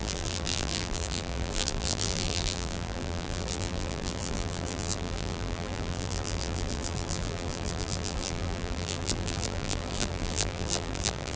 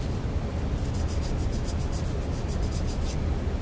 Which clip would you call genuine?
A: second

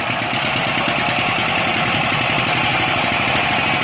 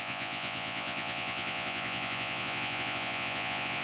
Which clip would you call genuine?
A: first